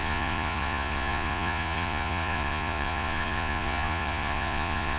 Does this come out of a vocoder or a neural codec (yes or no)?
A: yes